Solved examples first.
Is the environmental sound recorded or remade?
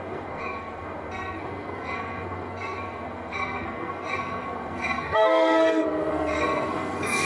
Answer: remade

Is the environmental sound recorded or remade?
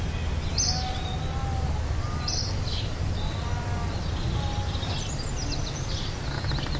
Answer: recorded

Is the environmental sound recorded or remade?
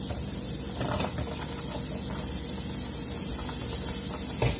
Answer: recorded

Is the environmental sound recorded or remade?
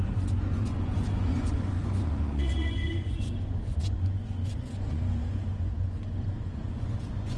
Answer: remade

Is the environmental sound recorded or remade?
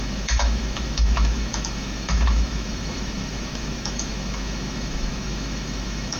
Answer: remade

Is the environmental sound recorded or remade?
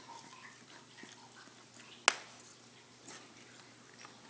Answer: recorded